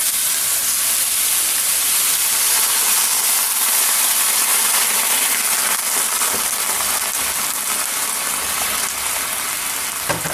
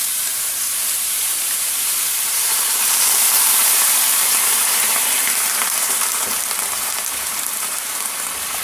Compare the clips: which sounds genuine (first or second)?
first